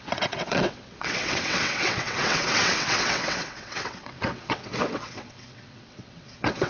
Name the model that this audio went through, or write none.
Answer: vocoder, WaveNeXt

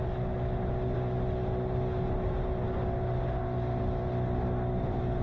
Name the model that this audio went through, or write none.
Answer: none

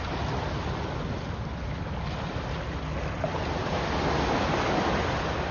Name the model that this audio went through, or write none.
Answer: none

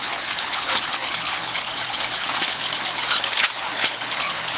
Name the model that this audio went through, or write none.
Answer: codec, HILCodec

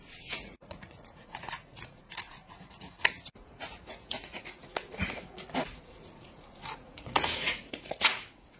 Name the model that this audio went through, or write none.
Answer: vocoder, Vocos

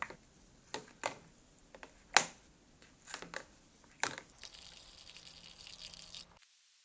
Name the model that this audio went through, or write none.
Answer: none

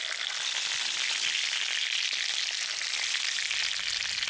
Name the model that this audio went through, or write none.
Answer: none